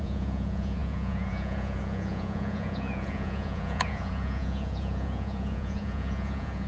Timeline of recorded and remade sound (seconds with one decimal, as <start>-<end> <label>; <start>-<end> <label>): 0.0-6.7 remade